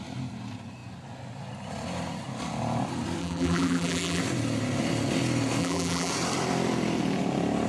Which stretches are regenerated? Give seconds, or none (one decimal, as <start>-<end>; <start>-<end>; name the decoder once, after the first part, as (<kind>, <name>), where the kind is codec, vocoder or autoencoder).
3.2-4.2 (vocoder, BigVGAN v2); 5.6-6.1